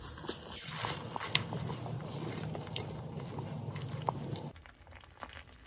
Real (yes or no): yes